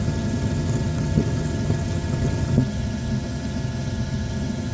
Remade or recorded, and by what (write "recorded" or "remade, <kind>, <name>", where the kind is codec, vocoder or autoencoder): remade, vocoder, HiFi-GAN